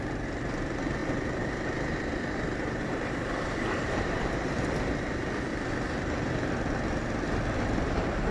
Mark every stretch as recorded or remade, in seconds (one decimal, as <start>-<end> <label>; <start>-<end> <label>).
0.0-1.0 remade; 1.0-2.8 recorded; 2.8-5.5 remade; 5.5-7.6 recorded; 7.6-8.3 remade